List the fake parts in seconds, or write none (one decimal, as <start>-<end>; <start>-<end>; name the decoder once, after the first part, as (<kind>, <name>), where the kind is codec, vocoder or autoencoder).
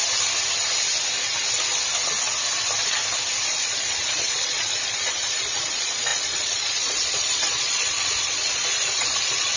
3.4-9.6 (vocoder, Vocos)